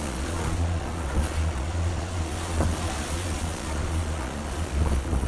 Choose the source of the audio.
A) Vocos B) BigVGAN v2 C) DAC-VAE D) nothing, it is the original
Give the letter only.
A